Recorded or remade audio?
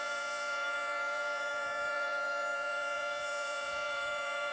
remade